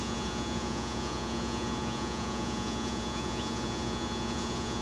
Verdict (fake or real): fake